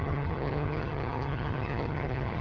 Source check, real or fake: fake